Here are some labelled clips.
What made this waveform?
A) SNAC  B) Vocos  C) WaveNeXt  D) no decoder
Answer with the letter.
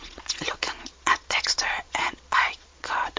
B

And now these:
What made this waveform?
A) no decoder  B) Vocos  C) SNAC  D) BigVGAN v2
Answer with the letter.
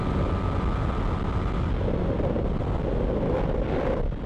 A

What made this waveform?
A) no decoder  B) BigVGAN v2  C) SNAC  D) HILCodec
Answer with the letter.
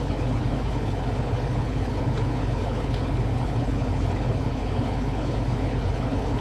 D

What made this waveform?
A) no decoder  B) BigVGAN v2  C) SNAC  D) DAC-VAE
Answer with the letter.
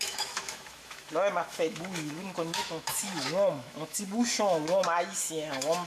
D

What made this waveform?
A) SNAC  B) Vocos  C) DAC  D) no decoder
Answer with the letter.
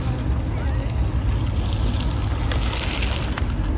D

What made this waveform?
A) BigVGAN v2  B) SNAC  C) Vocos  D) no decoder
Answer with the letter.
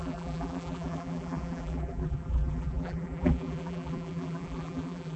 A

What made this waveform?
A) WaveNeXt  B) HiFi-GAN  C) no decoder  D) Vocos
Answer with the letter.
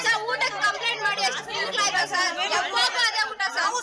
C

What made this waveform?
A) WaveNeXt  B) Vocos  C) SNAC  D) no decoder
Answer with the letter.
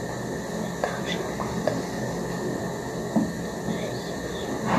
D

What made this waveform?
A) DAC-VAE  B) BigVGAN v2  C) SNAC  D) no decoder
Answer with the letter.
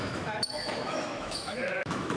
A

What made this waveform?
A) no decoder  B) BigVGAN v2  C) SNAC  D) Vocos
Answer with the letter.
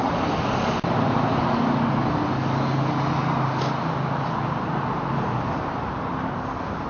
A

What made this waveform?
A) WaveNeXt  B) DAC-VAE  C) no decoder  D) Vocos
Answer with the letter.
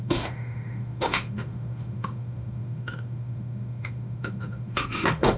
B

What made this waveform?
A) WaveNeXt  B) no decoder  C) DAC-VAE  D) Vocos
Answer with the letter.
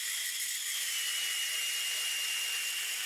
B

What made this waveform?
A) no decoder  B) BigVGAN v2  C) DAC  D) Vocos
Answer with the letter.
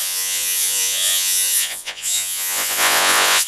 D